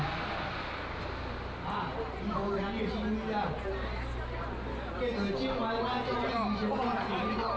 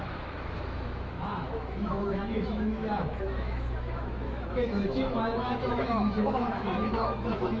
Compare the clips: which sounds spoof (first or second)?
second